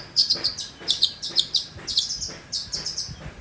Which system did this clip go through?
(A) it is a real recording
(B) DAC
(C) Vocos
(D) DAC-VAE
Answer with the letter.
A